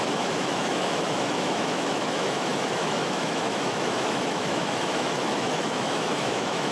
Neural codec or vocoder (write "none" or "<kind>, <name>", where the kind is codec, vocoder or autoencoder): autoencoder, DAC-VAE